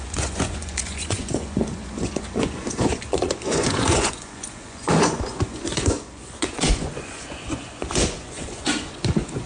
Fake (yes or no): yes